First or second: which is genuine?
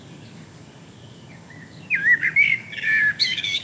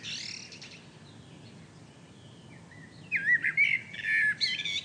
second